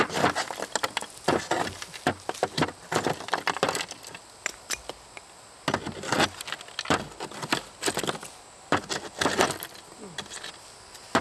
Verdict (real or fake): real